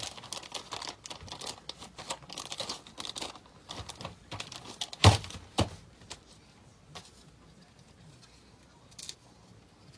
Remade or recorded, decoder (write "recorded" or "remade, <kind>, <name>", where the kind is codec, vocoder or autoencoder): recorded